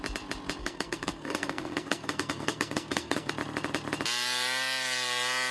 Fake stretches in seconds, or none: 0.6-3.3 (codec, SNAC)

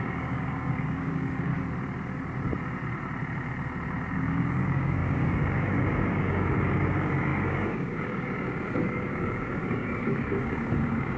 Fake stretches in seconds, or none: 0.0-1.5 (codec, DAC); 4.1-11.2

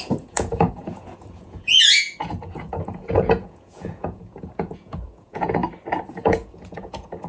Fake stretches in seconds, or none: 0.0-5.6 (vocoder, Vocos); 6.1-7.3

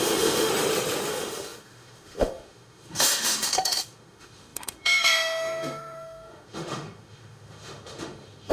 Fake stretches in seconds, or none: 0.0-0.5 (autoencoder, DAC-VAE); 1.1-8.5

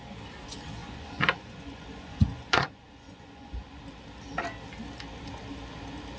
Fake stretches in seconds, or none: 0.8-3.8 (vocoder, Vocos)

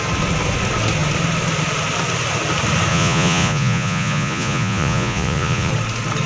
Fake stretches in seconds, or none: 2.9-5.7 (vocoder, Vocos)